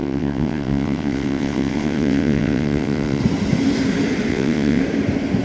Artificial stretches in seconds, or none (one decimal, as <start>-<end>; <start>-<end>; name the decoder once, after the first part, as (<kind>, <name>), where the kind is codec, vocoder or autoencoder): 0.0-3.2 (vocoder, WaveNeXt); 4.3-4.8